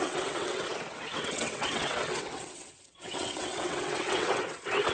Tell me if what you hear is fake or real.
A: fake